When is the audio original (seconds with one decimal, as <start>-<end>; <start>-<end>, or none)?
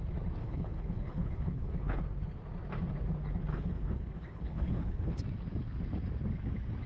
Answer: 0.0-0.4; 2.0-3.5; 5.2-6.9